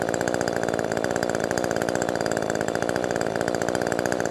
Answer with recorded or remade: remade